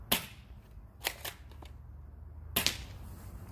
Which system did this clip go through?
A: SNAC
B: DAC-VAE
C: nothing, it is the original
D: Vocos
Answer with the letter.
C